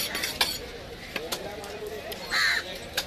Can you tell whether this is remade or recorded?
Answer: recorded